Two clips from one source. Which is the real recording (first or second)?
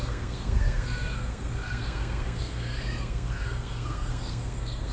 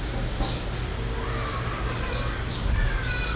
second